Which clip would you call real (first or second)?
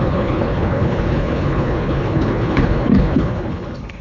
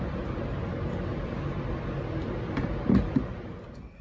second